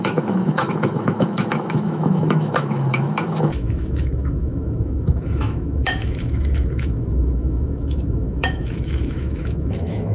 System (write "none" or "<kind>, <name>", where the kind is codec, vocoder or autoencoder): autoencoder, DAC-VAE